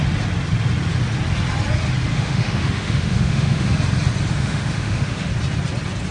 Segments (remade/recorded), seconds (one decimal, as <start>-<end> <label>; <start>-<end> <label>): 0.0-2.1 recorded; 2.1-3.7 remade; 3.7-4.3 recorded; 4.3-5.3 remade; 5.3-6.1 recorded